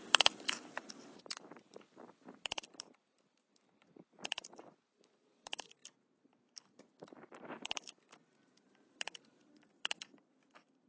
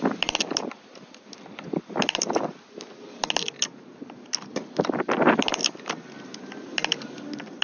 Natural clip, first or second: second